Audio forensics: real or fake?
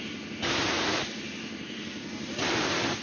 real